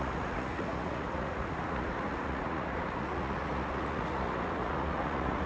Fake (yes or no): yes